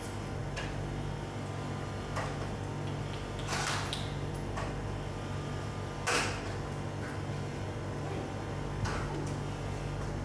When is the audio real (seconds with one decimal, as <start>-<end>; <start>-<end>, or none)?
0.0-10.2